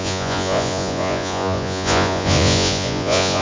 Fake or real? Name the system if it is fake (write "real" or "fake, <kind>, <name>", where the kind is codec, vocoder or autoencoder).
fake, vocoder, Vocos